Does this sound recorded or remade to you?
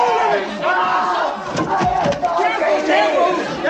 recorded